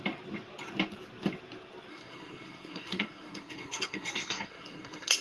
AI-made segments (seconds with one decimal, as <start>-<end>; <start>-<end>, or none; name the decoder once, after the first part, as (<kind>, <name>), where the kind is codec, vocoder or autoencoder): 1.9-5.2 (codec, SNAC)